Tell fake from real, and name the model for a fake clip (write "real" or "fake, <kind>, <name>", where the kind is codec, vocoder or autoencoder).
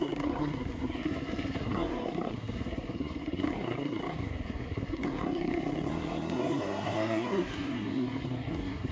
fake, codec, SNAC